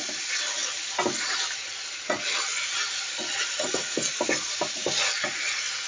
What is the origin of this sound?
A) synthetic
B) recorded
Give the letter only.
B